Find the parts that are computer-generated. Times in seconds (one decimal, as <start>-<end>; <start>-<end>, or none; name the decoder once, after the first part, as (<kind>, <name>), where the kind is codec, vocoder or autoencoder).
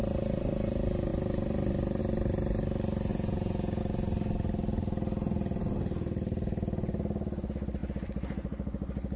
3.1-3.8 (vocoder, Vocos)